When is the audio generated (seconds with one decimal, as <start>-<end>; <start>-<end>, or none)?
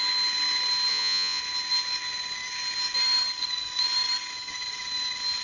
0.9-1.4